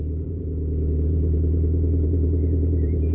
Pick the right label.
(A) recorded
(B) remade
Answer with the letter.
B